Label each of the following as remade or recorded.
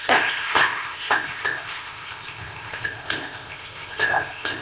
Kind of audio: remade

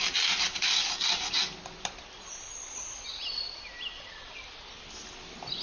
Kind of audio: recorded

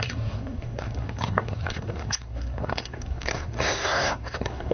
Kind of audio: remade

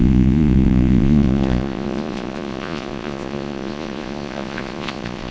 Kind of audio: remade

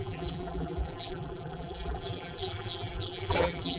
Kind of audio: remade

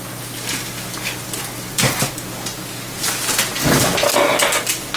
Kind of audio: recorded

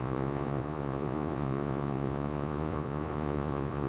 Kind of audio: remade